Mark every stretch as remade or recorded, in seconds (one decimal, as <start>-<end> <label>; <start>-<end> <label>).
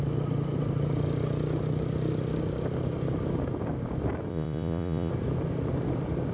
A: 0.0-4.3 recorded; 4.3-5.1 remade; 5.1-6.3 recorded